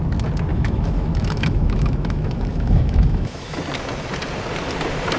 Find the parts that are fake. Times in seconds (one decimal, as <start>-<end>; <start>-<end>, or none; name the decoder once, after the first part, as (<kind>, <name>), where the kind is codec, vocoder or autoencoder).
0.5-3.6 (autoencoder, DAC-VAE)